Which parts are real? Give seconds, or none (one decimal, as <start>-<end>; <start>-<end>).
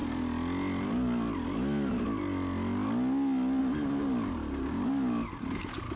0.0-6.0